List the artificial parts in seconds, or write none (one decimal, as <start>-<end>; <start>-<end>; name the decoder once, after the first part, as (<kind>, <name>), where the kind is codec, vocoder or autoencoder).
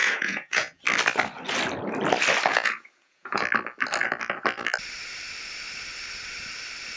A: 0.0-0.8 (vocoder, Vocos); 2.5-3.4